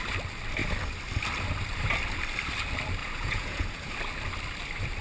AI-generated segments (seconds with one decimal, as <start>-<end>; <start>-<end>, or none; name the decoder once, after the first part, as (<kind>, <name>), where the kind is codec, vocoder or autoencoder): 3.0-3.9 (vocoder, Vocos)